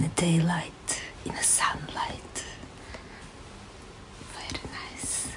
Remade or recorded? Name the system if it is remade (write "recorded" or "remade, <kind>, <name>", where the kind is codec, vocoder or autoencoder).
recorded